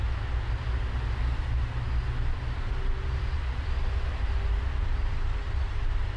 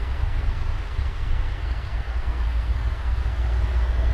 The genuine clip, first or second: first